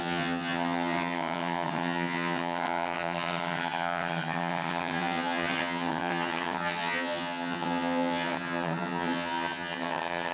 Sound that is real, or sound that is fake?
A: fake